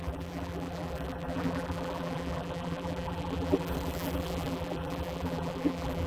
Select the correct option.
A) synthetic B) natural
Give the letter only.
A